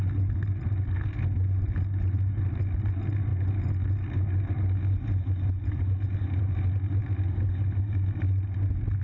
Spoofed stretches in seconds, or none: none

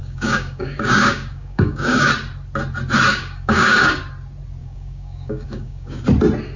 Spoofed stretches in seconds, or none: 0.0-2.1 (codec, DAC); 3.1-4.0; 4.6-6.0

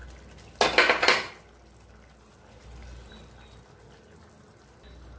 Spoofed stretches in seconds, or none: none

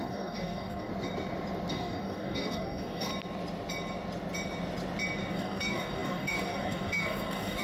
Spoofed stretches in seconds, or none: 0.0-0.9 (codec, DAC); 1.7-3.1; 5.3-7.6

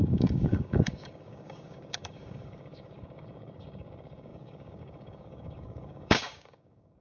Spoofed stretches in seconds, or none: 0.0-7.0 (codec, DAC)

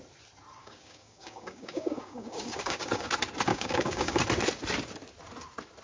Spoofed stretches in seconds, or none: 0.6-3.1 (codec, DAC); 3.5-4.2

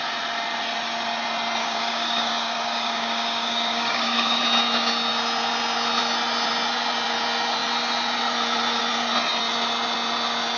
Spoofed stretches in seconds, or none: 1.6-4.4 (codec, DAC)

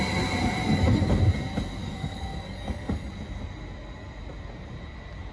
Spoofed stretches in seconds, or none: 0.6-1.1 (codec, DAC); 1.8-3.1